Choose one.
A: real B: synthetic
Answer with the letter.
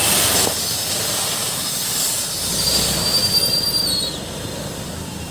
A